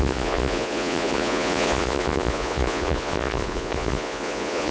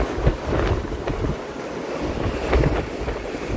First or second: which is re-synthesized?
first